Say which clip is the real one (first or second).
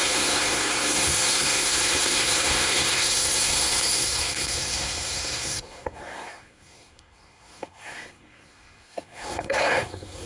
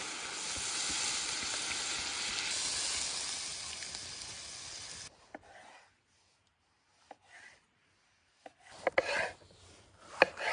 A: second